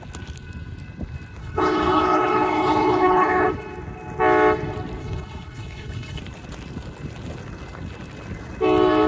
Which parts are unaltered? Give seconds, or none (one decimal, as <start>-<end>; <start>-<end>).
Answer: 0.0-1.4; 3.5-5.0; 6.2-9.1